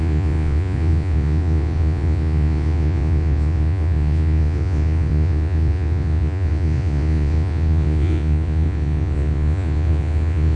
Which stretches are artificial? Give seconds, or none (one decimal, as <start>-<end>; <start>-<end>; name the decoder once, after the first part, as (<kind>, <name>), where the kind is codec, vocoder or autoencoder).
0.0-10.6 (vocoder, Vocos)